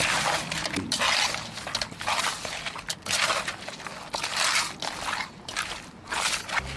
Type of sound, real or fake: real